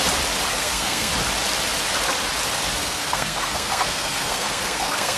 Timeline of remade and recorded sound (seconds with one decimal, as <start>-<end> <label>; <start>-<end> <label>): 0.0-0.5 recorded; 0.5-1.1 remade; 1.1-2.8 recorded; 2.8-5.2 remade